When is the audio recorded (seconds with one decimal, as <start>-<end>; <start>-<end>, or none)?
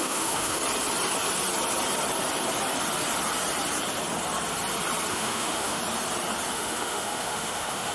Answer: 0.6-5.1; 5.8-6.5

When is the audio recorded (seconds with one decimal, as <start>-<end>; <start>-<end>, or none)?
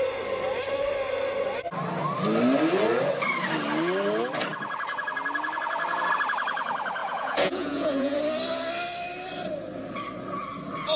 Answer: 0.0-7.0; 8.2-11.0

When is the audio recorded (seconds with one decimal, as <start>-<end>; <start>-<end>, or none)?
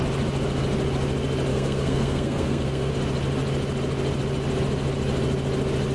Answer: 0.0-1.5; 2.9-5.9